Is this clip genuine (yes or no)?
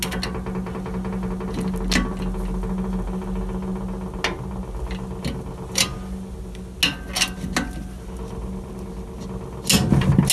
yes